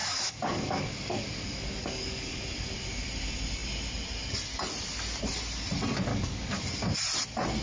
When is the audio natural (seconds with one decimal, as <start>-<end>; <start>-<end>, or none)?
2.4-6.1; 6.6-7.6